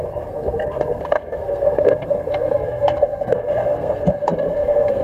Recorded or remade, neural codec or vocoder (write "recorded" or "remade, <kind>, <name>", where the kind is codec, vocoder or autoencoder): remade, codec, SNAC